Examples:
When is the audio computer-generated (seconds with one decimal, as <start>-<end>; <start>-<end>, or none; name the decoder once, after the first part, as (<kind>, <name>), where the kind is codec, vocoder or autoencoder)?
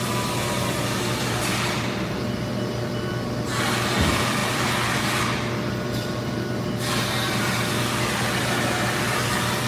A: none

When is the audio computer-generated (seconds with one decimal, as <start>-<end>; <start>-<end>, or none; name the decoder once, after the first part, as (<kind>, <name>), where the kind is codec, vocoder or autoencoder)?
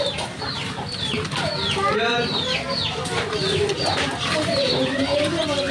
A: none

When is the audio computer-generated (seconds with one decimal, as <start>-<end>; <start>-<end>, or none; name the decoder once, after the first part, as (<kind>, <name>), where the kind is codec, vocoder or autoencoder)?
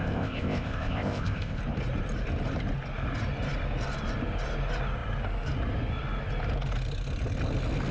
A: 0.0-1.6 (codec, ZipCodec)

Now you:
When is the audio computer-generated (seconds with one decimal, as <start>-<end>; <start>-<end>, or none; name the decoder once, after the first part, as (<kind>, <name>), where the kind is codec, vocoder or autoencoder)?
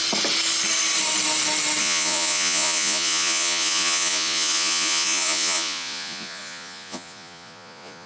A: 1.8-8.1 (vocoder, Vocos)